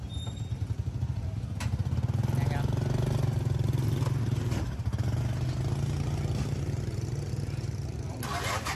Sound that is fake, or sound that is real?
real